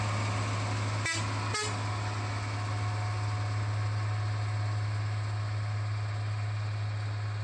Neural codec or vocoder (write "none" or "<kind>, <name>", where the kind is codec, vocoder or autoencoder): none